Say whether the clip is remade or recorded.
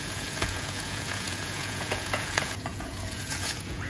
remade